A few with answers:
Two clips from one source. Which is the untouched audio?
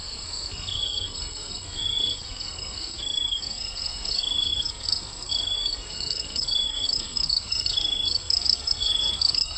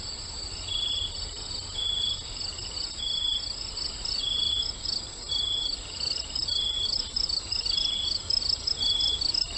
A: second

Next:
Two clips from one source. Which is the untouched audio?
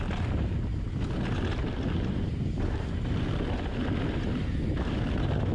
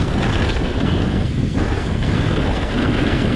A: first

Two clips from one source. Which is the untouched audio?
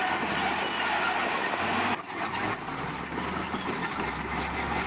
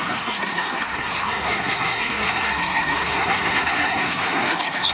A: first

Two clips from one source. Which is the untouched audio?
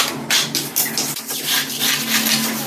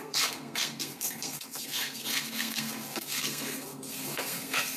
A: first